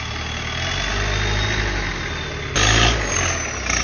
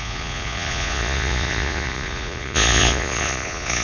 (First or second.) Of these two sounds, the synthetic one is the second